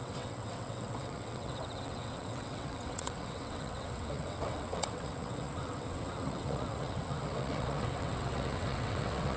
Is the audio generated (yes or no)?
yes